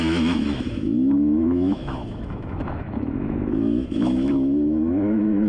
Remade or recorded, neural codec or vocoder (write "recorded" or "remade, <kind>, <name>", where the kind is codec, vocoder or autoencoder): remade, autoencoder, DAC-VAE